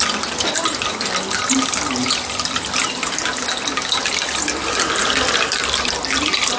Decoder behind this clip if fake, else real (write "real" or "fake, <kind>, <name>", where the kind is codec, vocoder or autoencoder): real